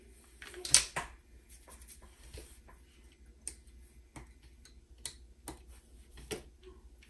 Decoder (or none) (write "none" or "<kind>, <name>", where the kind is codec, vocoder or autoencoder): none